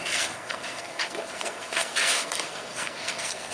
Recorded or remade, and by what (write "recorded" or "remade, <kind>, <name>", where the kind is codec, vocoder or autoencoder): remade, codec, SNAC